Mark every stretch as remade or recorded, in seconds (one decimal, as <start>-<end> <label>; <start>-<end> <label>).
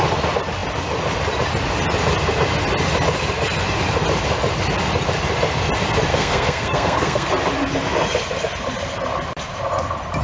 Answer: 0.0-6.1 recorded; 6.1-7.3 remade; 7.3-10.2 recorded